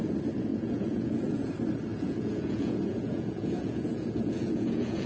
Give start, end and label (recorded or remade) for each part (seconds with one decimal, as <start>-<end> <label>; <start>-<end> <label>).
0.0-0.5 recorded; 0.5-1.5 remade; 1.5-1.9 recorded; 1.9-5.1 remade